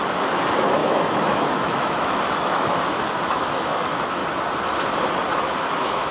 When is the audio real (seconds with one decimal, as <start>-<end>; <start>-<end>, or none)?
4.2-5.3